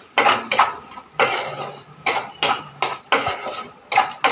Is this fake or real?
real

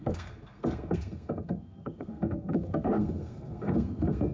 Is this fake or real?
fake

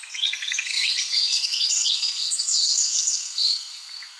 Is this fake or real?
fake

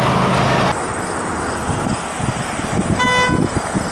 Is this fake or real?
real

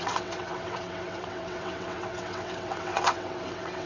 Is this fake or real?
fake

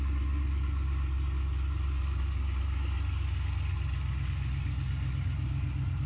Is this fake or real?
real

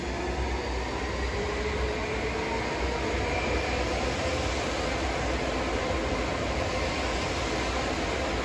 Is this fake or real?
real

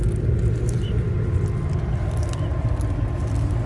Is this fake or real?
real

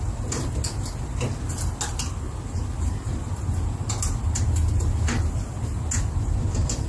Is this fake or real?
real